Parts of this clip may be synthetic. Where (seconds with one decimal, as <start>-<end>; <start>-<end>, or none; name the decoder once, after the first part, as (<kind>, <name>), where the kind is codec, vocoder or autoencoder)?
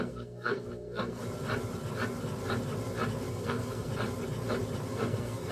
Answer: 0.0-1.2 (codec, SNAC); 3.3-3.9; 4.9-5.5